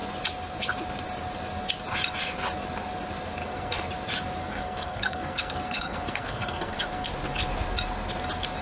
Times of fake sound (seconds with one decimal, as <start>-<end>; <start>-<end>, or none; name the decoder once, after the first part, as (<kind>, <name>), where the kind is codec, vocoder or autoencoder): 3.4-3.9 (codec, SNAC); 4.4-7.1